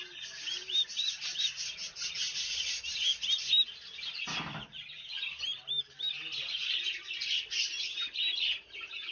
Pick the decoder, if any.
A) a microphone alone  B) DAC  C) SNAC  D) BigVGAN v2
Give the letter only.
A